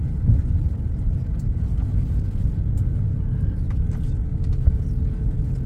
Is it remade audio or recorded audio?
recorded